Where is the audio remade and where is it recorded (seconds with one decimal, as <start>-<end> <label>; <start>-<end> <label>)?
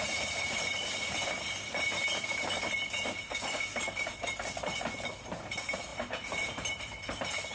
0.0-7.5 remade